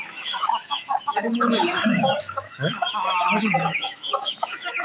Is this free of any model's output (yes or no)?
no